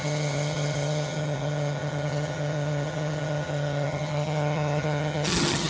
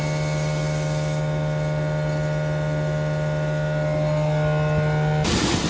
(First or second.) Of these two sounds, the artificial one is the first